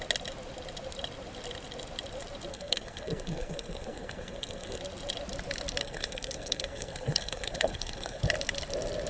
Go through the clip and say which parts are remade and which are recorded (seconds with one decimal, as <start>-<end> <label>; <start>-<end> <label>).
0.0-2.5 recorded; 2.5-4.8 remade; 4.8-5.8 recorded; 5.8-8.2 remade; 8.2-9.1 recorded